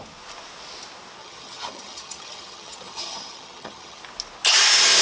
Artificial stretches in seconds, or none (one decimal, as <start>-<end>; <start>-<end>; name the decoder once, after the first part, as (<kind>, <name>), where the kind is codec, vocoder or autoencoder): 1.2-4.0 (vocoder, HiFi-GAN)